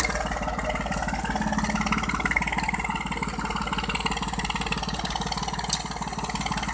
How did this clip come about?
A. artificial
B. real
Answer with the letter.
B